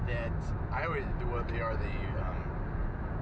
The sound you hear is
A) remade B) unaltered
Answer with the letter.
B